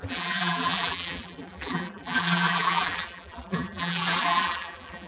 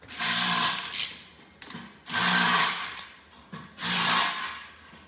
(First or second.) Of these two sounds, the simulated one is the first